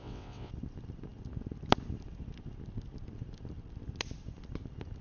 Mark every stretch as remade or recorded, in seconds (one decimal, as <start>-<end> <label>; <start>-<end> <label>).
0.0-0.5 remade; 0.5-5.0 recorded

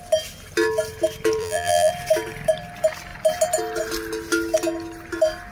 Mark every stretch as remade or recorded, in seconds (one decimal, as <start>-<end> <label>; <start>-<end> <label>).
0.0-1.4 recorded; 1.4-1.9 remade; 1.9-5.5 recorded

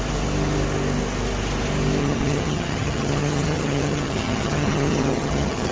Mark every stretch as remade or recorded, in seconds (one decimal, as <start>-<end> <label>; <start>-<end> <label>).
0.0-2.0 recorded; 2.0-5.7 remade

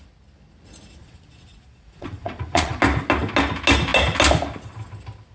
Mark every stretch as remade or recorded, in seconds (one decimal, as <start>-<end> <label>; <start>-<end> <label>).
0.0-1.0 recorded; 1.0-2.8 remade; 2.8-5.3 recorded

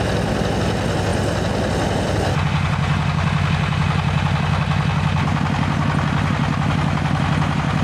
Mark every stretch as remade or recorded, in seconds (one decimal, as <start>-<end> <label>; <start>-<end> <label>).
0.0-7.8 recorded

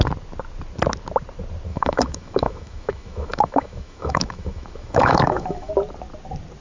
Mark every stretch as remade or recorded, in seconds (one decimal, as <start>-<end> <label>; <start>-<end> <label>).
0.0-1.7 recorded; 1.7-5.7 remade; 5.7-6.6 recorded

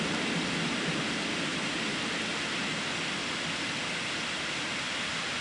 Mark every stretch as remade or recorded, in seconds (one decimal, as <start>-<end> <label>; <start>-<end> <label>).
0.0-5.4 recorded